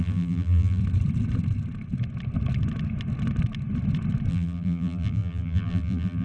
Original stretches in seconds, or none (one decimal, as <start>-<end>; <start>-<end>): 0.8-4.3

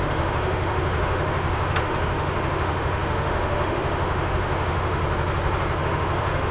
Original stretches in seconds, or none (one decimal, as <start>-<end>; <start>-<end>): 5.0-5.8